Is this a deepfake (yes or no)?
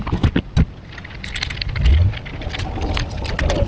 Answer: no